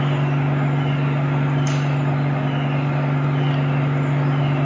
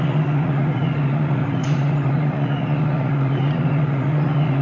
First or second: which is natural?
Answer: first